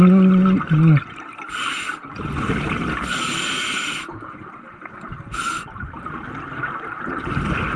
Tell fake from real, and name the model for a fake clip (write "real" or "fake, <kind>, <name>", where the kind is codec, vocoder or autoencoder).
real